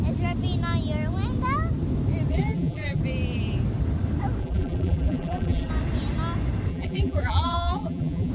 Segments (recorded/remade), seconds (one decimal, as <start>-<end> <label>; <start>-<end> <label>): 0.0-2.3 recorded; 2.3-3.0 remade; 3.0-4.4 recorded; 4.4-5.7 remade; 5.7-6.7 recorded; 6.7-8.3 remade